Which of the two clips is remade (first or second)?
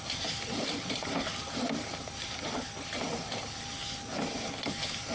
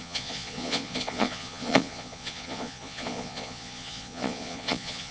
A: second